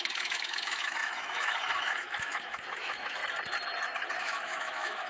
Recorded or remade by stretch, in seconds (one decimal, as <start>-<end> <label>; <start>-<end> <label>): 0.0-3.2 remade; 3.2-4.2 recorded; 4.2-5.1 remade